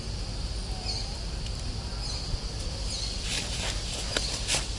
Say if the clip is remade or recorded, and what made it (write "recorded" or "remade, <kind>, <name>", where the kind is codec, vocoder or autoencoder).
recorded